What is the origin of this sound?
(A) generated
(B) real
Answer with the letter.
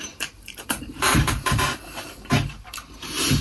A